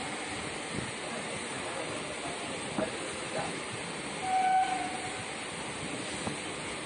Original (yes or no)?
yes